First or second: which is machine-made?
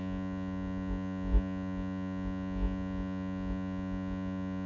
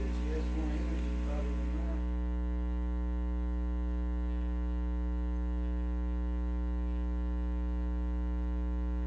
first